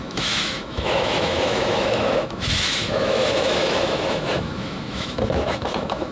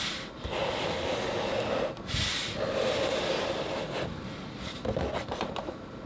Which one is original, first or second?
second